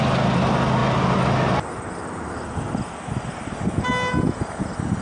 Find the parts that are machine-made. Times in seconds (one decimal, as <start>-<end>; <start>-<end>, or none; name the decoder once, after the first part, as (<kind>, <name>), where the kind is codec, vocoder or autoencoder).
none